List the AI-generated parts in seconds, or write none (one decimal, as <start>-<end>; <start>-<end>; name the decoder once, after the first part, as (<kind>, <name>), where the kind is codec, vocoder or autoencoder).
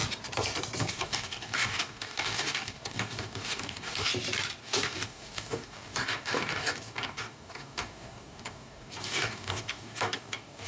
0.8-4.1 (codec, DAC); 4.6-10.7